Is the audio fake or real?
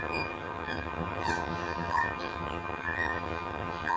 fake